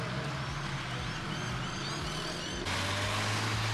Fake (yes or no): no